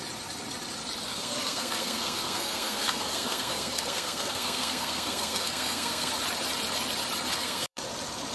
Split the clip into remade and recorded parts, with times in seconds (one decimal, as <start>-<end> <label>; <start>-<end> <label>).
0.0-1.1 recorded; 1.1-6.1 remade; 6.1-7.3 recorded; 7.3-7.8 remade; 7.8-8.3 recorded